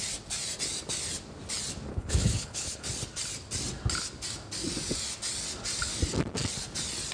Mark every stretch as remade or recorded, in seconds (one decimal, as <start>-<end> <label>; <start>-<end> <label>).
0.0-1.9 recorded; 1.9-2.9 remade; 2.9-7.1 recorded